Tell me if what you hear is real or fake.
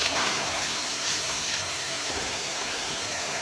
fake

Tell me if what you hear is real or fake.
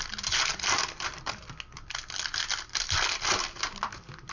real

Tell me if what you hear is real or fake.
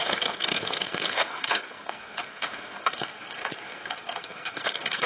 fake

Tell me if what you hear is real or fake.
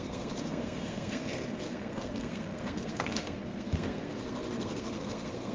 fake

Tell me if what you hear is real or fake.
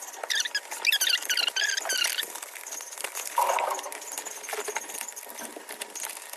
real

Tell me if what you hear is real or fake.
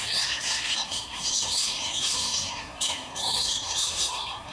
fake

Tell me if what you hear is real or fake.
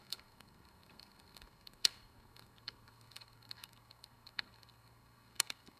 fake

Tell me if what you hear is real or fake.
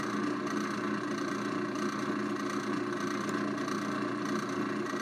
real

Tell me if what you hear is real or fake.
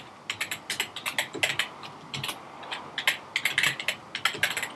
real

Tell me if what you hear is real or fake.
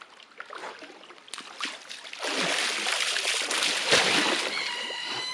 real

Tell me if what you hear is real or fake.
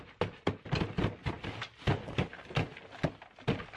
real